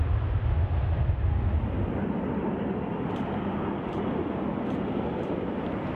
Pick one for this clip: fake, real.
real